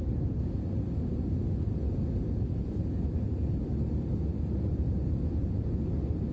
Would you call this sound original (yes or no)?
yes